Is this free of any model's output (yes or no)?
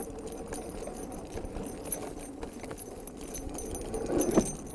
yes